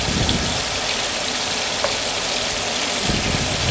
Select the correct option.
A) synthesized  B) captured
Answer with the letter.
B